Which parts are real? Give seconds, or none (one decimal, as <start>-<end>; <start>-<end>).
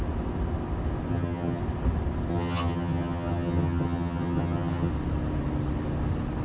0.0-1.1; 1.6-2.3; 4.9-6.4